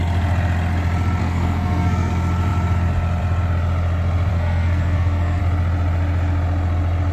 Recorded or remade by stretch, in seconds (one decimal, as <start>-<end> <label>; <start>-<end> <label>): 0.0-1.2 recorded; 1.2-2.1 remade; 2.1-4.3 recorded; 4.3-5.4 remade; 5.4-7.1 recorded